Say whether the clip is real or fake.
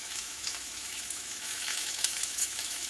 fake